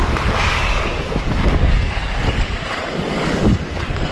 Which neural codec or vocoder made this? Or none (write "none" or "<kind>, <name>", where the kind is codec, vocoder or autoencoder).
codec, DAC